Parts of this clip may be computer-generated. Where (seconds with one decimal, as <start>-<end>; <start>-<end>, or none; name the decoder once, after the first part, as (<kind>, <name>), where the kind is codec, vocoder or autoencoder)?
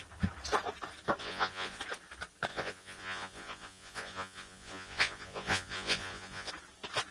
1.2-1.8 (vocoder, Vocos); 2.5-6.5